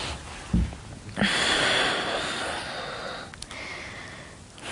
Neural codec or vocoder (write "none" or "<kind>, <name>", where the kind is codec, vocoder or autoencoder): none